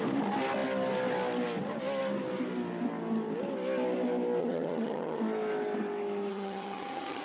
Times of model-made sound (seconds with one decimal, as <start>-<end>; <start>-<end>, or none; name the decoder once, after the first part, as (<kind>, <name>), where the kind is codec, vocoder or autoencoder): 4.4-5.2 (vocoder, HiFi-GAN); 6.3-7.2